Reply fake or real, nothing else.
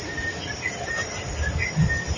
real